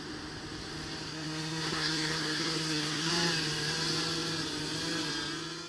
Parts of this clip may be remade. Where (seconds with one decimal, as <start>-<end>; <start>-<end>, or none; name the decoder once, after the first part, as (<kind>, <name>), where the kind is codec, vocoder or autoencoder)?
1.1-3.1 (codec, SNAC)

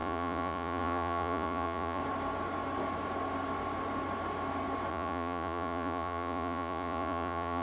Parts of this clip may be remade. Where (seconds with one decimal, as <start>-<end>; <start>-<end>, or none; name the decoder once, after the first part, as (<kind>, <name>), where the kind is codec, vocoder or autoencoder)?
0.0-2.0 (vocoder, Vocos); 4.9-7.6

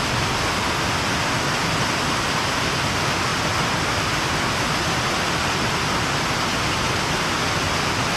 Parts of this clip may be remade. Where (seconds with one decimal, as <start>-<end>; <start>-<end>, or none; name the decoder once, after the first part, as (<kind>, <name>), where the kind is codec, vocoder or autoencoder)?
none

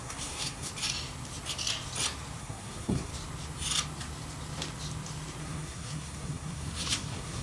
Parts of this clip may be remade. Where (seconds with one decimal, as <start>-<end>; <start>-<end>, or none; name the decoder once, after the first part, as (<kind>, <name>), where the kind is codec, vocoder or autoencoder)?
0.0-0.7 (codec, SNAC); 2.4-3.1; 5.4-7.4

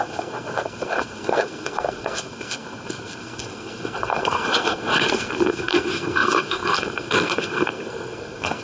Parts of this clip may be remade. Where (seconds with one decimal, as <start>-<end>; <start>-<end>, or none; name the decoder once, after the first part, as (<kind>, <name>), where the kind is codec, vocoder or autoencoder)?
0.0-8.6 (codec, SNAC)

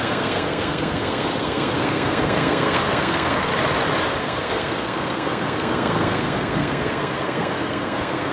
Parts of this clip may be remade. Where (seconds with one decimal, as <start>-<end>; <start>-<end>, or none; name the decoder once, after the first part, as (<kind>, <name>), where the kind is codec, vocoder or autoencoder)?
0.0-3.5 (codec, SNAC); 4.2-8.3

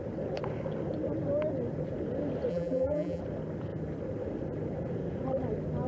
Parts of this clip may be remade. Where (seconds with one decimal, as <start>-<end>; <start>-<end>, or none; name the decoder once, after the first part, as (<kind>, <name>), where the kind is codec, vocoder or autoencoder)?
2.5-3.2 (vocoder, BigVGAN v2)

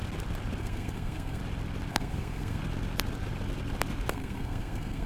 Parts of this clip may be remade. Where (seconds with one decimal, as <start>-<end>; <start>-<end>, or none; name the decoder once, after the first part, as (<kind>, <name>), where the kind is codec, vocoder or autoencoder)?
0.6-1.4 (codec, SNAC); 1.9-2.6; 4.1-5.1